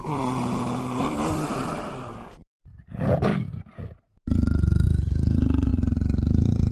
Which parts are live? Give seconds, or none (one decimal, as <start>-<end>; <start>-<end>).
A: 1.7-2.1; 2.7-5.7